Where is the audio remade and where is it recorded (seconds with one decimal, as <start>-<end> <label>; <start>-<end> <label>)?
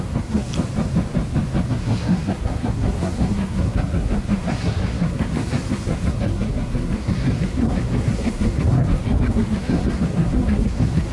0.0-0.5 remade; 0.5-1.7 recorded; 1.7-11.1 remade